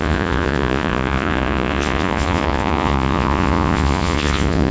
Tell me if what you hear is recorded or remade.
remade